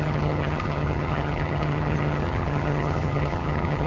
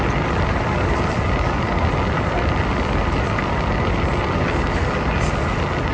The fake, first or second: first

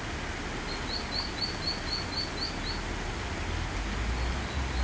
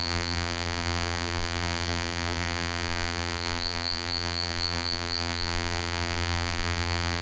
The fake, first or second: second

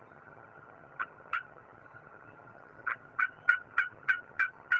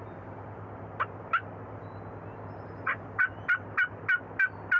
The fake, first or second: first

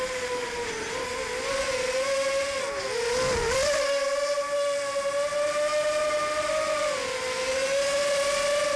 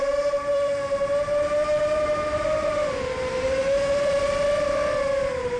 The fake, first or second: second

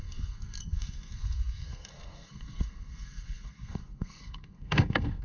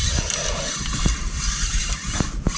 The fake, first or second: first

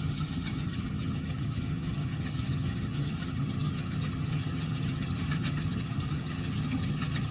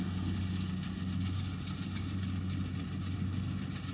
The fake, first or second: first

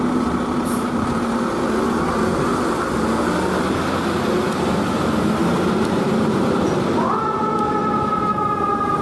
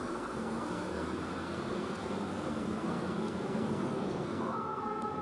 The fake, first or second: second